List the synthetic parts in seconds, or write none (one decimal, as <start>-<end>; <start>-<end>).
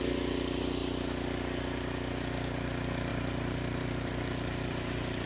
3.1-5.3